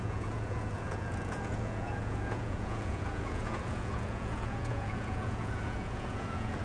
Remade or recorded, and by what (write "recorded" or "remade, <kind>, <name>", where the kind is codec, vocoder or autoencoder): remade, vocoder, Vocos